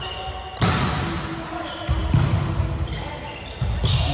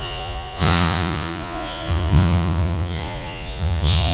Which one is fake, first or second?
second